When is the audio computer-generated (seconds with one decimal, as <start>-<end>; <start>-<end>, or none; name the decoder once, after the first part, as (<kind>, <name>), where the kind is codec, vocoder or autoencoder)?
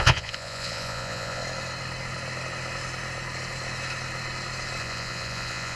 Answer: 0.0-1.4 (vocoder, Vocos); 4.8-5.8